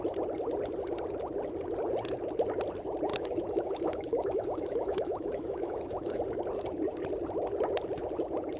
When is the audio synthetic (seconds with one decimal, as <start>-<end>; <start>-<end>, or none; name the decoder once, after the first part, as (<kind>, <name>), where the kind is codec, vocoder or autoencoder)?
3.1-6.2 (autoencoder, DAC-VAE)